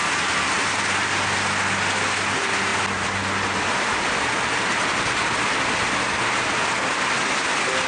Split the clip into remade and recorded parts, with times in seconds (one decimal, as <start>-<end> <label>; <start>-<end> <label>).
0.0-7.9 recorded